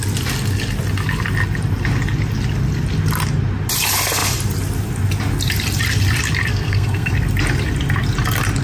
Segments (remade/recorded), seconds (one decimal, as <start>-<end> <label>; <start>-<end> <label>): 0.0-6.5 recorded; 6.5-7.1 remade; 7.1-8.6 recorded